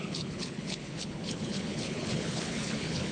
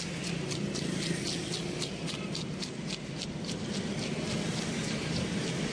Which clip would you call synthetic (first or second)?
first